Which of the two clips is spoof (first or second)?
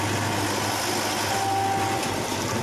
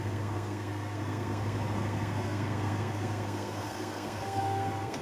second